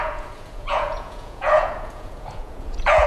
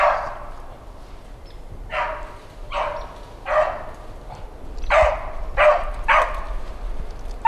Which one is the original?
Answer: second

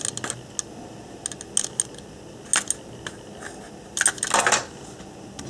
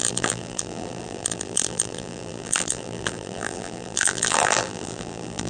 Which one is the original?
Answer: first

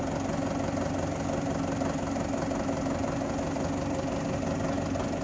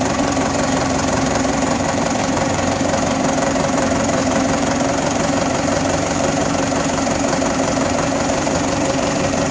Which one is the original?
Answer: first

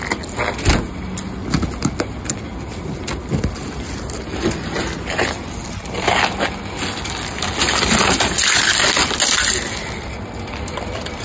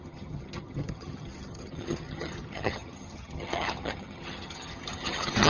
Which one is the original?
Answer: first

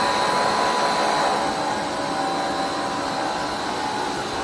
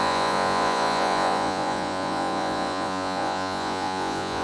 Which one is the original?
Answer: first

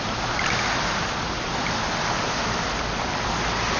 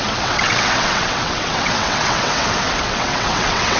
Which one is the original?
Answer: first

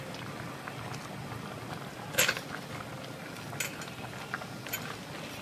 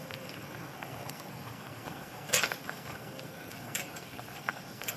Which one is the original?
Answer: first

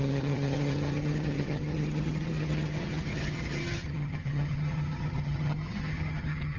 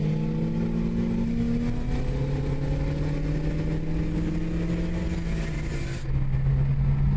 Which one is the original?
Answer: second